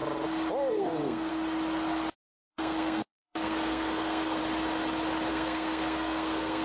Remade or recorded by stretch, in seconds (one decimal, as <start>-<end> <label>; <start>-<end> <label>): 0.0-0.7 recorded; 0.7-1.3 remade; 1.3-2.5 recorded; 2.5-4.4 remade; 4.4-5.3 recorded; 5.3-6.6 remade